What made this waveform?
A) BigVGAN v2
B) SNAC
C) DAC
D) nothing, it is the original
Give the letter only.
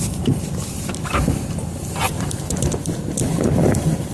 A